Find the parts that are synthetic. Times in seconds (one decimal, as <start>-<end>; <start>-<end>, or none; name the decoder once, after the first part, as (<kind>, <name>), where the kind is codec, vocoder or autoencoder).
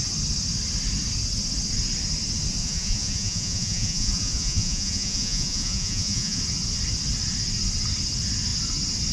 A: 2.6-6.4 (vocoder, Vocos)